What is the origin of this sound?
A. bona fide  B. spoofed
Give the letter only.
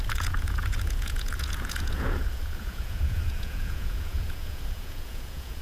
B